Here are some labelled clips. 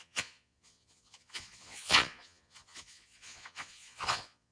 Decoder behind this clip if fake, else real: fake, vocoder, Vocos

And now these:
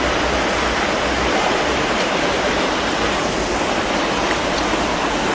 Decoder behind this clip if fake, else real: real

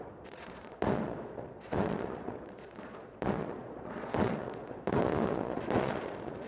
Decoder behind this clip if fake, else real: fake, vocoder, Vocos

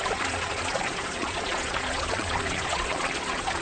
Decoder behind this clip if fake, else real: fake, vocoder, Vocos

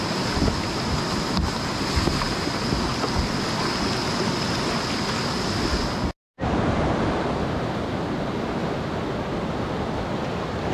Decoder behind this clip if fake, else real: real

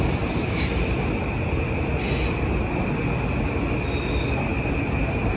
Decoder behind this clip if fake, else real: real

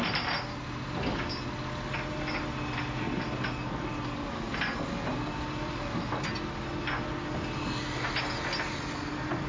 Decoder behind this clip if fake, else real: real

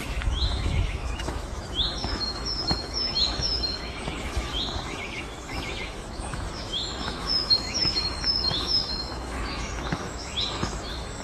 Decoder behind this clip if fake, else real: fake, autoencoder, DAC-VAE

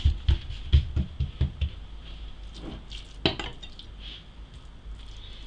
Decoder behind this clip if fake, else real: real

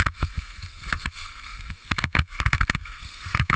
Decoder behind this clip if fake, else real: fake, codec, SNAC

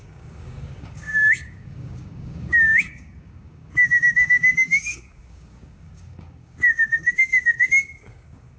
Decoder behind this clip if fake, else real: fake, codec, DAC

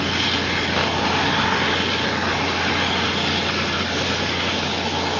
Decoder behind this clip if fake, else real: real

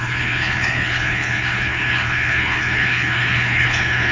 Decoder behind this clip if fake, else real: fake, codec, HILCodec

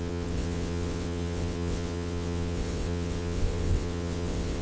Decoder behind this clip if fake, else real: fake, vocoder, WaveNeXt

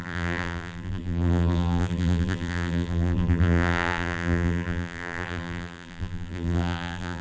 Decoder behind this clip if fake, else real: fake, vocoder, BigVGAN v2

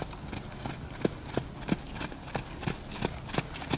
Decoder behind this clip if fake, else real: real